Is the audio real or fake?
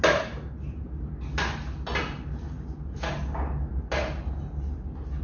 real